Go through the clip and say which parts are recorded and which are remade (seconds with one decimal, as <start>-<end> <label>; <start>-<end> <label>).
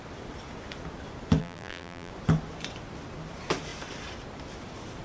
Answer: 0.0-1.4 recorded; 1.4-2.1 remade; 2.1-5.0 recorded